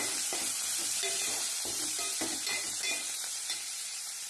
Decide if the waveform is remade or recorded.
remade